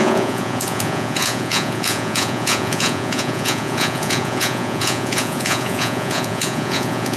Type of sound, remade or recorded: remade